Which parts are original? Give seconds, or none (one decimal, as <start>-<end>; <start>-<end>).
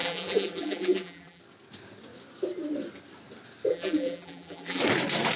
1.4-3.7; 4.8-5.4